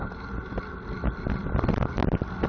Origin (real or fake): real